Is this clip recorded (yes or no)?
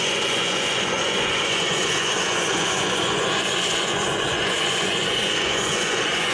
no